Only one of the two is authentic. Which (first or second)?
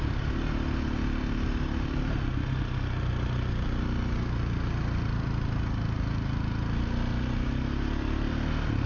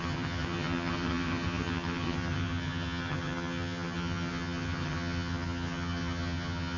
first